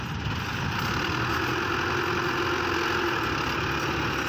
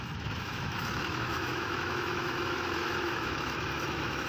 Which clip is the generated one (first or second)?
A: second